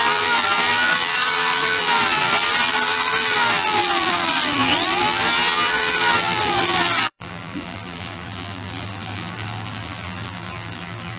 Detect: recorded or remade remade